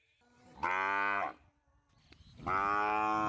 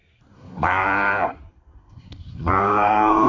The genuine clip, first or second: first